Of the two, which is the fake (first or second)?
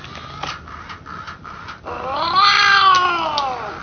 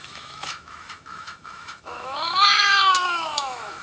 second